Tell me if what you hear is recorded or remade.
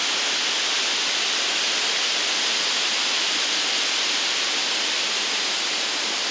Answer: recorded